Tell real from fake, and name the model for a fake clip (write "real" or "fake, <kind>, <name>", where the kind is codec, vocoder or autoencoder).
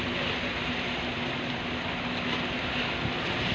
real